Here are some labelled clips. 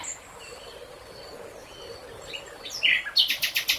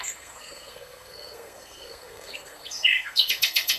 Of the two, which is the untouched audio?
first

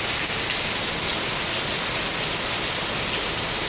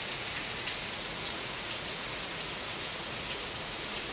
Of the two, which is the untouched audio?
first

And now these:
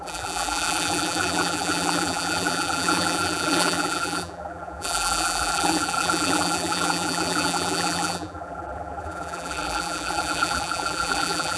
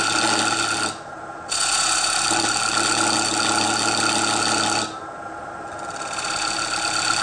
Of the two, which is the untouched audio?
second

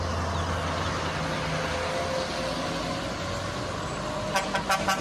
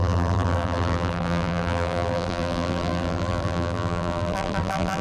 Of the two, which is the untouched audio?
first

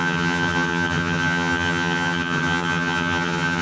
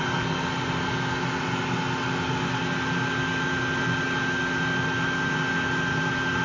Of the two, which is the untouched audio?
second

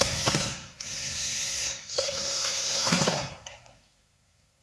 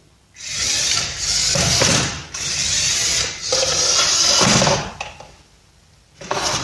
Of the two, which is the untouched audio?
second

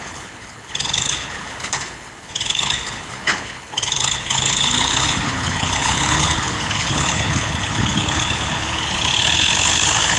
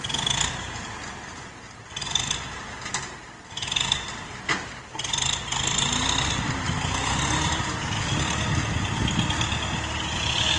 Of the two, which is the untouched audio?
second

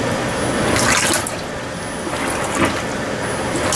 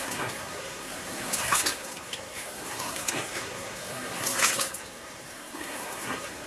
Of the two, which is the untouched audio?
first